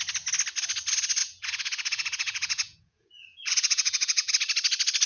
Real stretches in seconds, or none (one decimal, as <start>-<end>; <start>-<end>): 0.0-1.2; 4.3-5.1